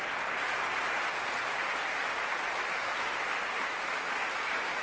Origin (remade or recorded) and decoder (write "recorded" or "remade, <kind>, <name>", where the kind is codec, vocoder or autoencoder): recorded